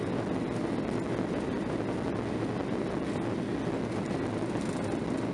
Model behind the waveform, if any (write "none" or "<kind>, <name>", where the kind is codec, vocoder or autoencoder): none